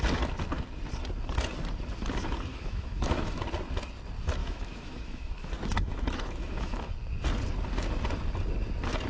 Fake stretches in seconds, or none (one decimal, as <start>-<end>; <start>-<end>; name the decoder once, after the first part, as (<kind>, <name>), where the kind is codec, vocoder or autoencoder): 2.5-3.4 (autoencoder, DAC-VAE); 4.4-6.9